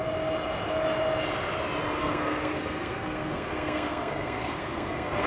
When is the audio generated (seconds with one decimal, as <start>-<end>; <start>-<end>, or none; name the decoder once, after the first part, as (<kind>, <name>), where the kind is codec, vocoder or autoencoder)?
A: 2.0-5.3 (codec, SNAC)